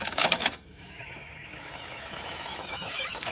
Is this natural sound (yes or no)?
no